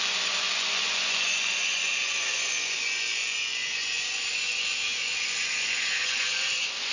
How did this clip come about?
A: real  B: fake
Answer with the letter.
B